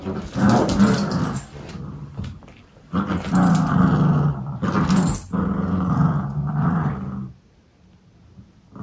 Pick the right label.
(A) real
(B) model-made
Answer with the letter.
A